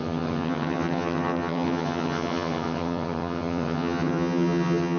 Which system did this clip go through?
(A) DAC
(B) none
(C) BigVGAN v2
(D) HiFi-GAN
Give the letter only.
D